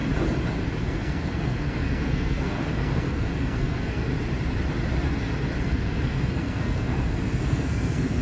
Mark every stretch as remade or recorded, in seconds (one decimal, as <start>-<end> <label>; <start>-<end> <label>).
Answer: 0.0-0.8 recorded; 0.8-4.1 remade; 4.1-5.6 recorded; 5.6-8.2 remade